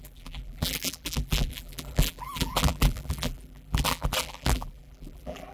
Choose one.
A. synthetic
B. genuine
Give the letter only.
A